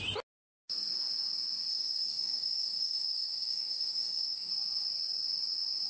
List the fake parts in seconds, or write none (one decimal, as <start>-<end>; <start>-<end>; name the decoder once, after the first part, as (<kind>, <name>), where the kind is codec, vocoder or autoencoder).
1.7-4.5 (codec, DAC)